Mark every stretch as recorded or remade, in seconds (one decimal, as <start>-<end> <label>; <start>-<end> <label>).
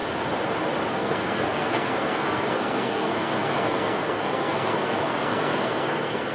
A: 0.0-0.9 recorded; 0.9-6.3 remade